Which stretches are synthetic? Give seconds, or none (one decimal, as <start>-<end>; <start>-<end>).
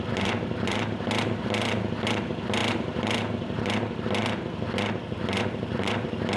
none